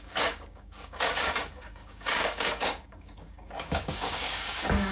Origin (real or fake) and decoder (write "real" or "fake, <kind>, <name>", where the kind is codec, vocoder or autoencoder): fake, codec, DAC